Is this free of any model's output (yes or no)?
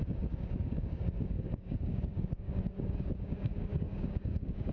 no